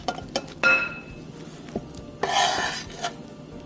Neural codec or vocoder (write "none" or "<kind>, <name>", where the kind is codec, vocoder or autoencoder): none